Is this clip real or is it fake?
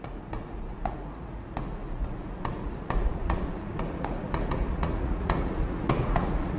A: fake